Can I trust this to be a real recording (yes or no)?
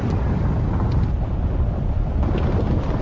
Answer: yes